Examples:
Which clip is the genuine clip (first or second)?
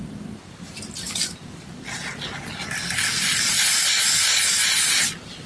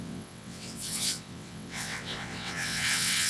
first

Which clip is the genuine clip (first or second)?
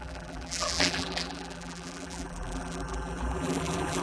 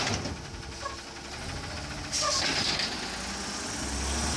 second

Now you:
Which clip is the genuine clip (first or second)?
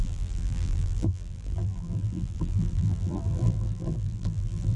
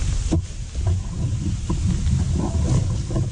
second